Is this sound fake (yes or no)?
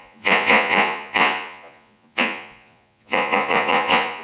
yes